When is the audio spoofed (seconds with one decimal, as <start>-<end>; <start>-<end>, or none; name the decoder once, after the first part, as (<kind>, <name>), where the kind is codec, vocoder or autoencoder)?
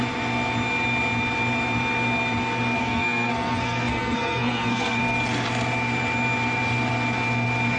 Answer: 2.8-5.0 (codec, SNAC)